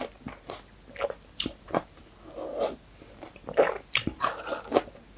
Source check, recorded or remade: recorded